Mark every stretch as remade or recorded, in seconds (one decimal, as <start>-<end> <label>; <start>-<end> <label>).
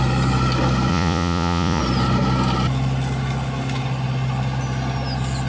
0.0-0.9 recorded; 0.9-1.8 remade; 1.8-5.5 recorded